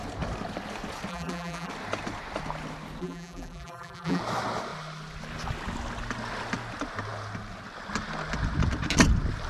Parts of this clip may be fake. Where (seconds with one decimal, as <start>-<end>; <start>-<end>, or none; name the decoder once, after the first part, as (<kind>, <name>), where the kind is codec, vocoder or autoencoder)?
1.1-1.7 (vocoder, BigVGAN v2); 3.0-4.2